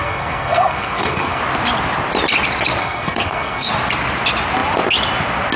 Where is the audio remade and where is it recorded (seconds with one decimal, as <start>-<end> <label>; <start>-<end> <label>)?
0.0-1.4 remade; 1.4-2.8 recorded; 2.8-3.7 remade; 3.7-5.6 recorded